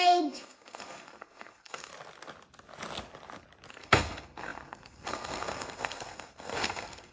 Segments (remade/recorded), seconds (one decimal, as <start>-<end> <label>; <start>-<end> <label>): 0.0-1.9 remade; 1.9-3.7 recorded; 3.7-7.1 remade